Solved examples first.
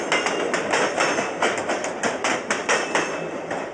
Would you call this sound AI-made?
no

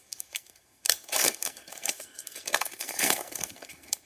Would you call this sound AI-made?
yes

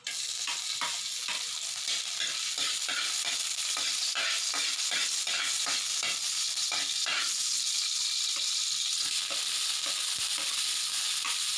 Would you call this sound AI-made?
no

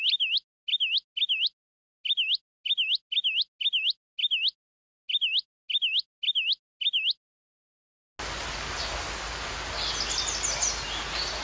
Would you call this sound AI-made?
no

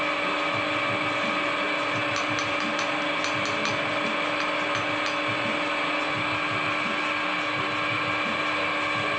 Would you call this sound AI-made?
no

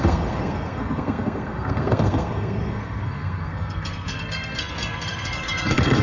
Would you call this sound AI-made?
yes